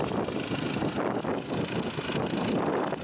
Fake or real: real